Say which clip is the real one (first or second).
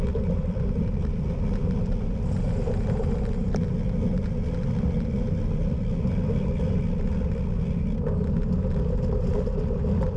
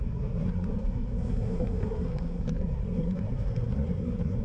first